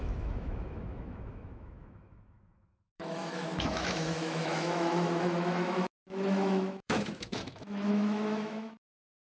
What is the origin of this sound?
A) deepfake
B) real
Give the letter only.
A